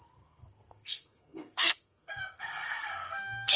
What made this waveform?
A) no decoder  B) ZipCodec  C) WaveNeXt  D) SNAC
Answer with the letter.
D